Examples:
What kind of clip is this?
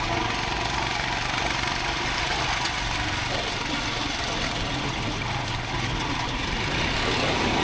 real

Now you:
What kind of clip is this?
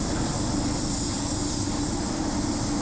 real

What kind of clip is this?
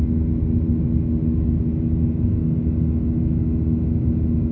real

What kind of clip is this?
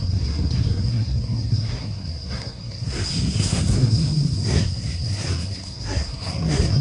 fake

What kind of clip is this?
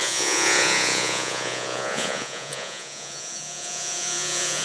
fake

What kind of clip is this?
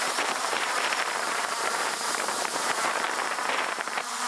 fake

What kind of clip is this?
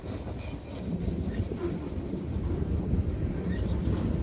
real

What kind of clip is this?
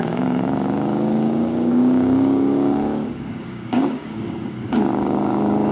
fake